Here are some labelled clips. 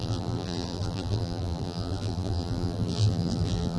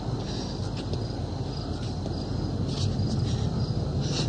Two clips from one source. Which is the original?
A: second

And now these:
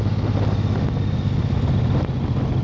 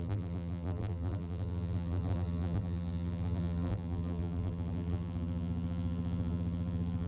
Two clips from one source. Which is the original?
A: first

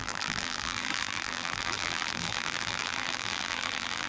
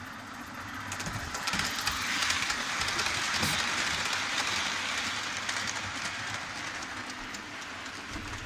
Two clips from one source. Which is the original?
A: second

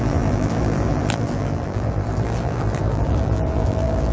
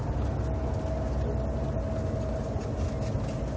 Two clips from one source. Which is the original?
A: second